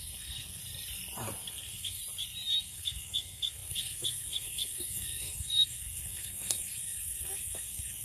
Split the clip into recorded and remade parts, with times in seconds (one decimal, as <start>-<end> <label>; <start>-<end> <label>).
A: 0.0-0.6 remade; 0.6-1.5 recorded; 1.5-2.0 remade; 2.0-2.6 recorded; 2.6-8.0 remade